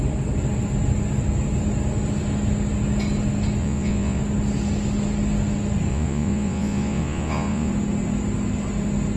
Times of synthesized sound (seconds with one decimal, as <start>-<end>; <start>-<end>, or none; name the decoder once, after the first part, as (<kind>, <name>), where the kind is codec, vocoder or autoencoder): 3.6-4.2 (vocoder, Vocos); 5.9-7.7